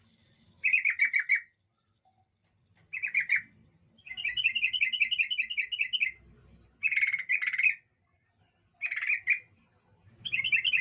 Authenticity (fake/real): real